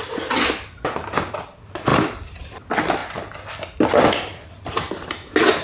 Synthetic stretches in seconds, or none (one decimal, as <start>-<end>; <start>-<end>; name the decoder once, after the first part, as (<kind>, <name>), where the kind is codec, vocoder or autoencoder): none